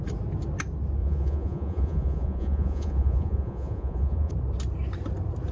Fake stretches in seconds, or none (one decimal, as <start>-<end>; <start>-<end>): 1.0-4.3